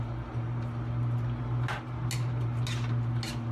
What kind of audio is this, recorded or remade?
recorded